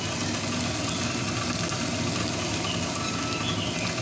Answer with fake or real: real